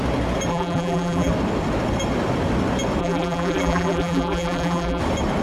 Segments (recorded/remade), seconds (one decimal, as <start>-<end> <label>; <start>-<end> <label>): 0.0-0.5 recorded; 0.5-1.3 remade; 1.3-3.0 recorded; 3.0-5.0 remade; 5.0-5.4 recorded